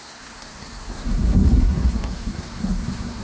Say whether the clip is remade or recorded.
remade